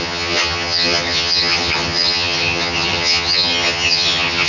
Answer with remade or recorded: remade